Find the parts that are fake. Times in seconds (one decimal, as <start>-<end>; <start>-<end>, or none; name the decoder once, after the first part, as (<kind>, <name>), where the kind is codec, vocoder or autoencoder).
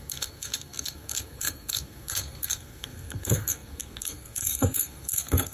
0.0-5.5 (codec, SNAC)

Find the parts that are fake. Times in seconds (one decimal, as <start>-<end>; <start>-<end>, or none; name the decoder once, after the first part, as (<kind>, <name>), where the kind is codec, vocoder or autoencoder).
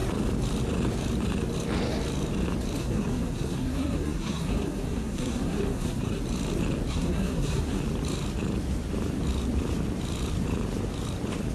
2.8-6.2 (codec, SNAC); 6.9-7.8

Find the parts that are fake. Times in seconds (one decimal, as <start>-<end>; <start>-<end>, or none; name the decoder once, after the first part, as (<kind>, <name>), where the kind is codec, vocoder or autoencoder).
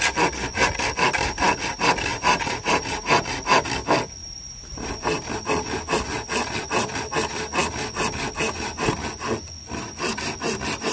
2.1-3.3 (vocoder, BigVGAN v2); 4.2-4.9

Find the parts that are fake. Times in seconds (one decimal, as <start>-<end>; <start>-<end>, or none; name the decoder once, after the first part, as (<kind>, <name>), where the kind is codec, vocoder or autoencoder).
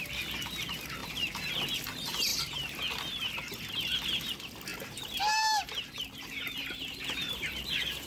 1.0-1.5 (vocoder, BigVGAN v2); 4.7-7.3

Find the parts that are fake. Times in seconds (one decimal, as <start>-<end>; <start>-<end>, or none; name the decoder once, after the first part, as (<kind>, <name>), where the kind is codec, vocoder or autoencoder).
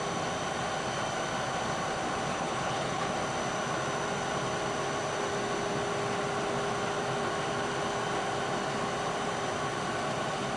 2.3-3.1 (codec, HILCodec)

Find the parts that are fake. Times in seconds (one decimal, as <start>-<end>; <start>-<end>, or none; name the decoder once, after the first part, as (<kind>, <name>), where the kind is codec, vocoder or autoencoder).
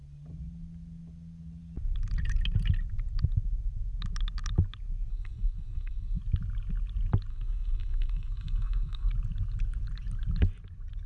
5.1-6.2 (codec, SNAC); 7.3-9.1